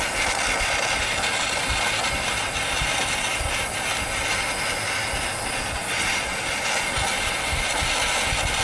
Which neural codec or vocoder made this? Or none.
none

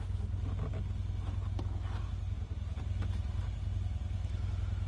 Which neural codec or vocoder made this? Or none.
none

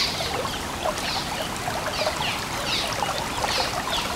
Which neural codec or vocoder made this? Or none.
none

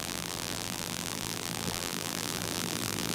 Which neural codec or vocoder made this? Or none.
vocoder, BigVGAN v2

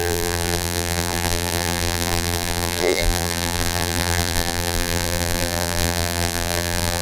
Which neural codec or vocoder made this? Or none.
vocoder, BigVGAN v2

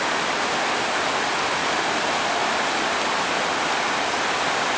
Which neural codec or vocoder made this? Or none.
none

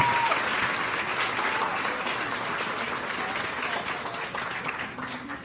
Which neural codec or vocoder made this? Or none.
none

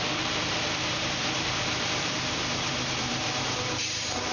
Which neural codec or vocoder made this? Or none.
vocoder, BigVGAN v2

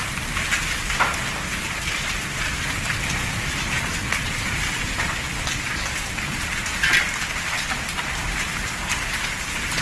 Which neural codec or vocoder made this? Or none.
vocoder, BigVGAN v2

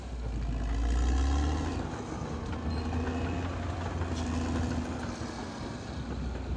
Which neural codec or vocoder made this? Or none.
none